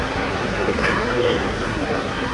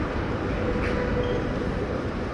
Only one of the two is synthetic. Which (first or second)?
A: first